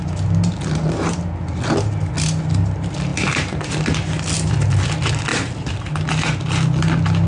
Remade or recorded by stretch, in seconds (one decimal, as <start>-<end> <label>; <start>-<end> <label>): 0.0-7.3 recorded